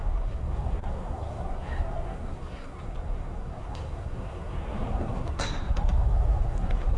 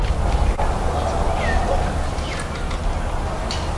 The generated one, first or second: first